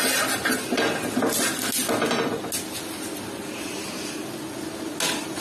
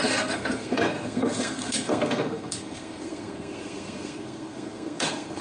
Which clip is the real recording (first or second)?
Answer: first